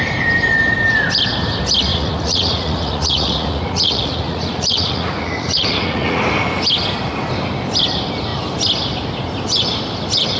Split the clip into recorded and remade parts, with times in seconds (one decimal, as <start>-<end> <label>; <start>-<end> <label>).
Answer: 0.0-1.9 recorded; 1.9-6.2 remade; 6.2-10.4 recorded

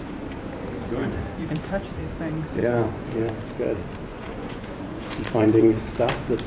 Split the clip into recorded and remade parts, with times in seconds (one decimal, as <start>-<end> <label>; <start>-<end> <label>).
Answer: 0.0-1.0 recorded; 1.0-2.0 remade; 2.0-2.6 recorded; 2.6-3.3 remade; 3.3-4.1 recorded; 4.1-5.8 remade; 5.8-6.5 recorded

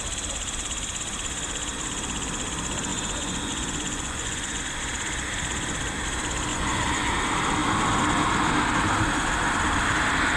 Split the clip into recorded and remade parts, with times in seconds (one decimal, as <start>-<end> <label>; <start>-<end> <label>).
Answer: 0.0-2.9 recorded; 2.9-4.6 remade; 4.6-6.5 recorded; 6.5-7.1 remade; 7.1-10.4 recorded